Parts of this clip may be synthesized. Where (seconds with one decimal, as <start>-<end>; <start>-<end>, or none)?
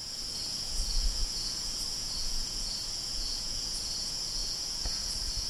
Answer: 0.0-5.5